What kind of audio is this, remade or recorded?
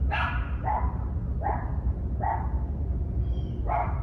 remade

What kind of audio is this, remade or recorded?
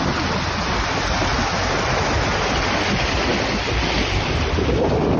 recorded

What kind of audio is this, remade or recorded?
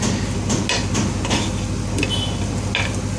recorded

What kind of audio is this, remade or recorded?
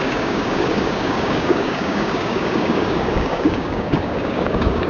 remade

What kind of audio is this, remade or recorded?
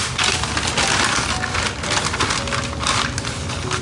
recorded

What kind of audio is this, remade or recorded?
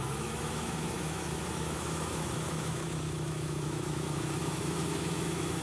remade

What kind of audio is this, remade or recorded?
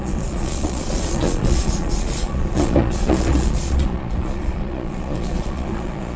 remade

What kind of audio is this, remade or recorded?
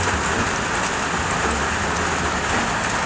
recorded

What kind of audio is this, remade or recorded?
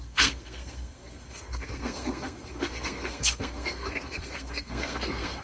remade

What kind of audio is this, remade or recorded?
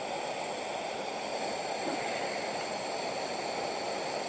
recorded